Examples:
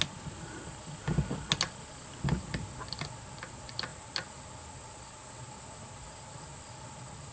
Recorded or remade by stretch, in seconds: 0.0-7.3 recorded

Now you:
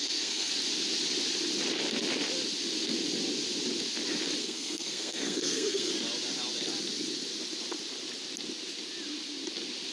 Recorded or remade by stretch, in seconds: 0.0-0.5 remade; 0.5-4.4 recorded; 4.4-5.9 remade; 5.9-9.9 recorded